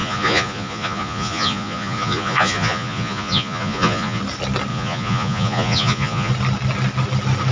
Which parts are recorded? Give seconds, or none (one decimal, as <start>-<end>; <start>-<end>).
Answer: 4.2-4.7; 6.3-7.5